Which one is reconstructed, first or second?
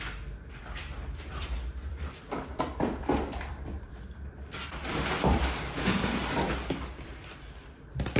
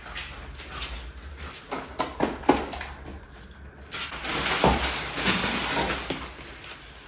first